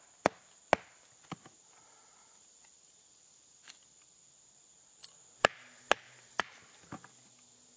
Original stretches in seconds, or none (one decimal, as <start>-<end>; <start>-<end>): 0.0-7.8